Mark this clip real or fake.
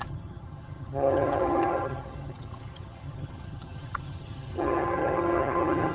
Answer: fake